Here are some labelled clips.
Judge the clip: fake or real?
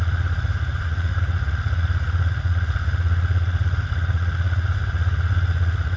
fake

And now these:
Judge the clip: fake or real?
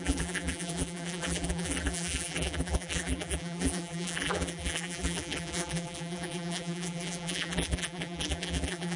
fake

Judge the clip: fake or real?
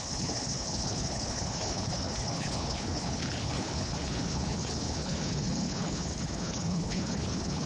fake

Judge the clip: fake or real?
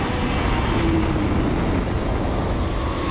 real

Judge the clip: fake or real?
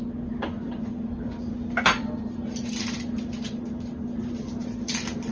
real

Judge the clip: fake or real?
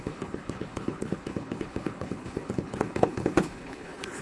fake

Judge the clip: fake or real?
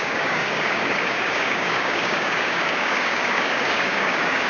fake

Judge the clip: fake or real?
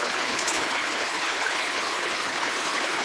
fake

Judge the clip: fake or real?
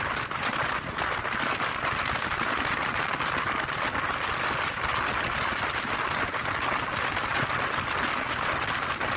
real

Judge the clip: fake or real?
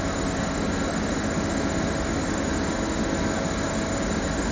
real